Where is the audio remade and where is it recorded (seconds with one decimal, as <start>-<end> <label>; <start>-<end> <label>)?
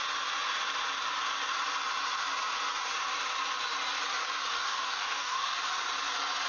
0.0-4.5 recorded; 4.5-5.6 remade; 5.6-6.5 recorded